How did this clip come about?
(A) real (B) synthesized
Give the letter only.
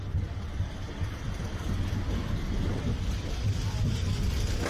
A